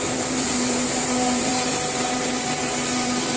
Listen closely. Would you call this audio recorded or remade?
remade